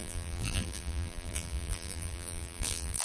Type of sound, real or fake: fake